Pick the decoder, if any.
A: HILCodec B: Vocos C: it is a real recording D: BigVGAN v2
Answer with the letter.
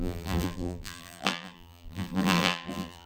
D